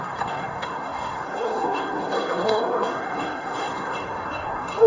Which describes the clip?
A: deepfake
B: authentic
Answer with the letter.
A